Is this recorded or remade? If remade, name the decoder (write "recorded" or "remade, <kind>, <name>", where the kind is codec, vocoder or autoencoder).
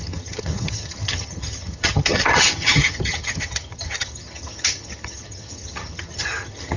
remade, vocoder, HiFi-GAN